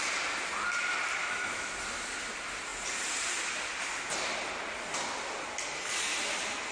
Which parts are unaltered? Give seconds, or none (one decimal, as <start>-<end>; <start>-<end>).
0.0-1.2; 1.7-6.7

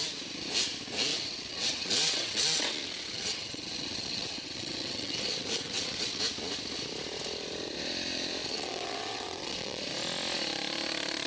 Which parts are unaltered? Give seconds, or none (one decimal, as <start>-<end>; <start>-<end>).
0.0-1.1; 6.2-8.4; 9.8-11.3

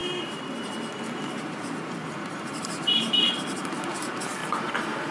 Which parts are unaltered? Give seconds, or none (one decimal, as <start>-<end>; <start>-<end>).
4.4-5.1

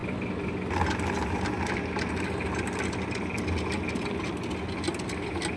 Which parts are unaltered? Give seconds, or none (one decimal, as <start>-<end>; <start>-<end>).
0.0-5.6

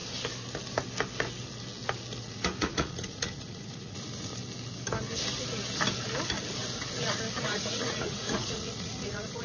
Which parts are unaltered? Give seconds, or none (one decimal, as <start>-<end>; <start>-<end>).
0.0-2.2; 4.3-7.4

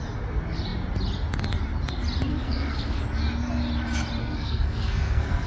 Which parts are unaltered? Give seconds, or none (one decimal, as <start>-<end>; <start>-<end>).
0.0-2.3; 3.0-4.2

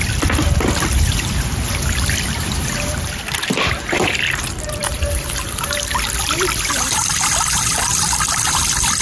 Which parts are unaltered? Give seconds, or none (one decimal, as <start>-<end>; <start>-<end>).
none